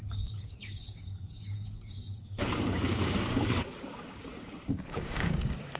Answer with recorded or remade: remade